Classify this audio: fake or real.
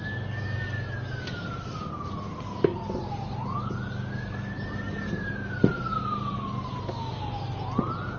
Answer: real